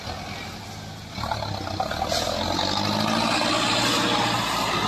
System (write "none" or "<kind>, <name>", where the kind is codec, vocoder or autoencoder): none